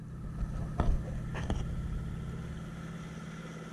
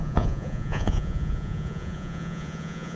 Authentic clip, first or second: first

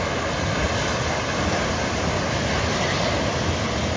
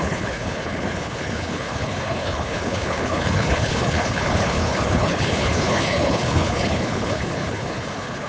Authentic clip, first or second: first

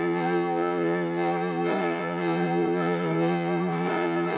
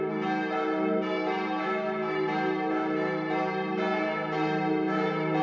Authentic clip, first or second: second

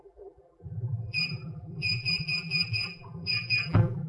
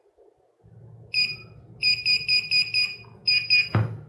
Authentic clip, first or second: second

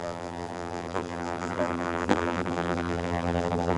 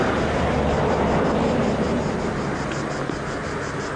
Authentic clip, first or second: second